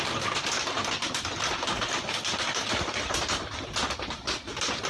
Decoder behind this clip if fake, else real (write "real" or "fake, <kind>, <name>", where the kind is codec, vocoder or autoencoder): real